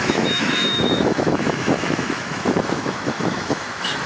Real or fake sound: fake